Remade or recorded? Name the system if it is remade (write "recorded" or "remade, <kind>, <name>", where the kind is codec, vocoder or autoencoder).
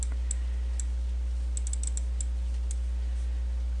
recorded